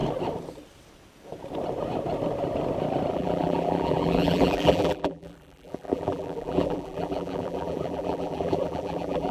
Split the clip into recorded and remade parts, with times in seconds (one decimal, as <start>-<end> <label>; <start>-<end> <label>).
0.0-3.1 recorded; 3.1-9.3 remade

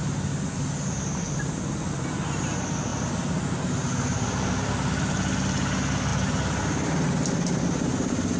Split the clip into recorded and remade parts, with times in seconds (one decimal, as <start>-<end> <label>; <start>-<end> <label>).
0.0-2.9 recorded; 2.9-3.5 remade; 3.5-8.4 recorded

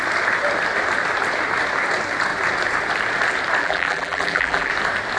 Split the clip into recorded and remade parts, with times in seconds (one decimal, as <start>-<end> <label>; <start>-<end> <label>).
0.0-3.6 recorded; 3.6-4.7 remade; 4.7-5.2 recorded